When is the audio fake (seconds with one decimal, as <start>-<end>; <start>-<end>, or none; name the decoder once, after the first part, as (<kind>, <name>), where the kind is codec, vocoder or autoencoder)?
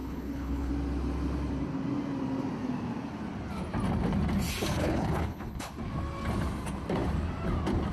0.0-0.7 (codec, HILCodec); 4.8-5.7